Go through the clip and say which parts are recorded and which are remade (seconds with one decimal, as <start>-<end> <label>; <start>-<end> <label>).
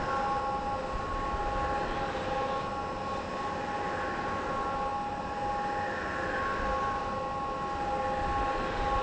0.0-9.0 recorded